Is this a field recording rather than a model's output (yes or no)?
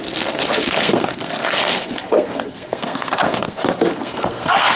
no